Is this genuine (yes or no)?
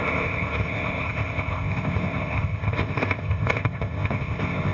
no